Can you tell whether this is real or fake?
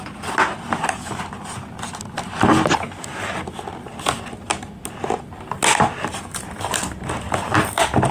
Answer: real